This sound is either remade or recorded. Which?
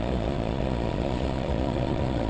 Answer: remade